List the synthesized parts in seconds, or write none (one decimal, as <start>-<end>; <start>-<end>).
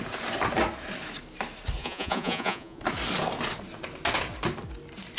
1.8-2.8